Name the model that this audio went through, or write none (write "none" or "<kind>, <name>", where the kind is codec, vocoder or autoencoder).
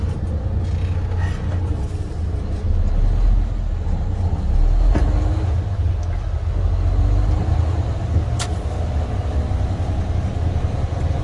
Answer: none